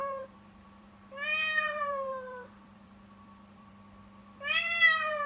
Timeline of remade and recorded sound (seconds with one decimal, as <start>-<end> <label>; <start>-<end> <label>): 0.0-0.9 remade; 0.9-1.4 recorded; 1.4-3.7 remade; 3.7-4.2 recorded; 4.2-5.3 remade